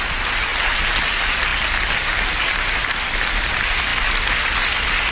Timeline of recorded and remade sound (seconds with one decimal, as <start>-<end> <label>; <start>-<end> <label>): 0.0-5.1 recorded